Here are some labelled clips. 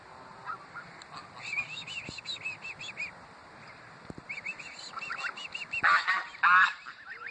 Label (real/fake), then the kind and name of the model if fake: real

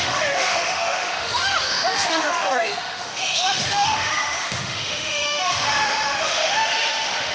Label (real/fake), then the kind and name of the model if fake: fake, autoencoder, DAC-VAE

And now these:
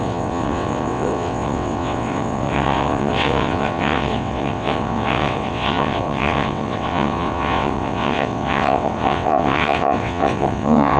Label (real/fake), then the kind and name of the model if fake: fake, vocoder, WaveNeXt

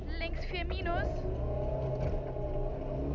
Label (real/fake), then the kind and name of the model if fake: real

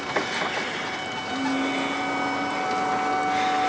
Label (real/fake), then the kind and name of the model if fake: real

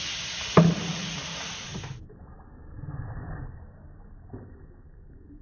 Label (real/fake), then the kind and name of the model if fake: real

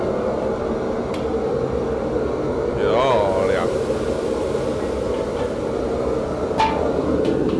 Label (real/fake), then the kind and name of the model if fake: real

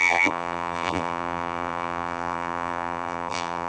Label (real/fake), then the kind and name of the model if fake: fake, vocoder, BigVGAN v2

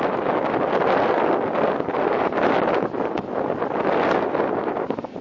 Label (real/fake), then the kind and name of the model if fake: fake, vocoder, BigVGAN v2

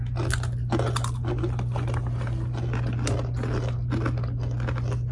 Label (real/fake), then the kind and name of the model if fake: real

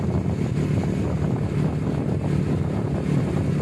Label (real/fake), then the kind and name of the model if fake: real